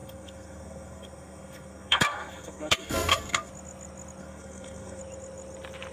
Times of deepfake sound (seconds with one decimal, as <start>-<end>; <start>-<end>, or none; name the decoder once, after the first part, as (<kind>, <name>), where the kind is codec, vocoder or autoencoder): 0.0-3.5 (codec, SNAC); 4.2-5.0